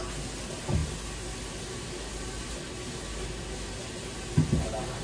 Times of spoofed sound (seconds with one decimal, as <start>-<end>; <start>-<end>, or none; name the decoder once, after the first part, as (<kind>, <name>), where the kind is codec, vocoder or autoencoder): none